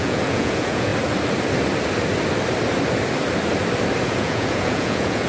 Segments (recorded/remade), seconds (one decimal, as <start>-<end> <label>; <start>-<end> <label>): 0.0-0.9 remade; 0.9-4.1 recorded; 4.1-5.3 remade